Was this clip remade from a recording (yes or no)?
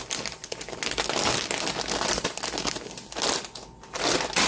no